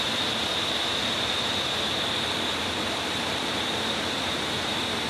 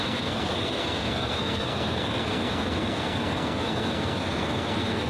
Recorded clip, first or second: first